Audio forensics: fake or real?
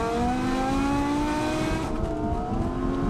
real